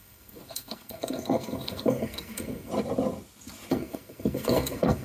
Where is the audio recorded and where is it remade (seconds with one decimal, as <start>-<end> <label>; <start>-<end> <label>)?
0.0-2.7 remade; 2.7-3.7 recorded; 3.7-5.0 remade